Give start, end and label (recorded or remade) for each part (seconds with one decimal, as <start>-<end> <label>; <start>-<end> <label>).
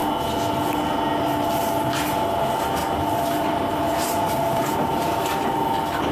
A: 0.0-1.2 recorded; 1.2-6.1 remade